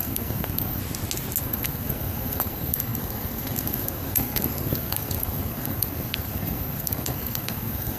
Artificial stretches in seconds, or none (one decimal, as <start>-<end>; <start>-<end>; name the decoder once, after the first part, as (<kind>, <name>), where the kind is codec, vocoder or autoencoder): 0.0-0.8 (codec, SNAC); 1.4-8.0